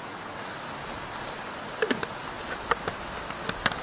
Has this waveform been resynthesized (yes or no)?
no